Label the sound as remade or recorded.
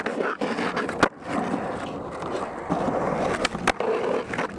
recorded